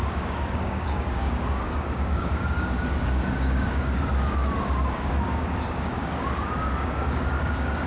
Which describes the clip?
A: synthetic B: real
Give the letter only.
A